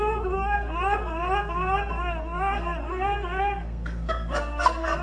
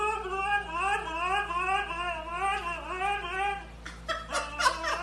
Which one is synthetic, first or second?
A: first